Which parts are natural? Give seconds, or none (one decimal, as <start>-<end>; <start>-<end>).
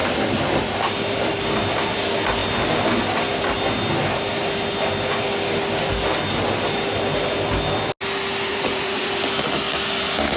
0.0-8.5; 9.1-10.4